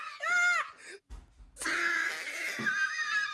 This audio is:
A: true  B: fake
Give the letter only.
A